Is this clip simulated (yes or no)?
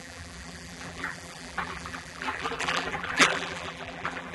yes